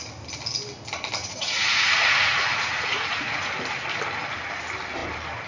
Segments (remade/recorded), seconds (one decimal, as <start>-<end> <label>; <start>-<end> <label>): 0.0-1.2 recorded; 1.2-3.5 remade; 3.5-5.5 recorded

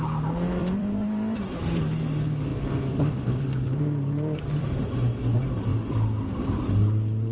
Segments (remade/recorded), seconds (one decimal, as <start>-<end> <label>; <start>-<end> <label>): 0.0-0.6 recorded; 0.6-1.8 remade; 1.8-2.5 recorded; 2.5-4.7 remade; 4.7-5.7 recorded; 5.7-6.7 remade; 6.7-7.3 recorded